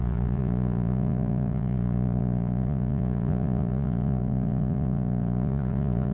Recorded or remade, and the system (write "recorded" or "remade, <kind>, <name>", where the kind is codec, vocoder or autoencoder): remade, vocoder, Vocos